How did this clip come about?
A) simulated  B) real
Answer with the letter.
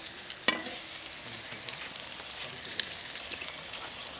B